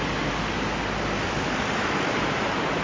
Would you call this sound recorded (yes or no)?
yes